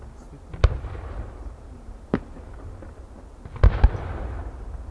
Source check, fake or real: real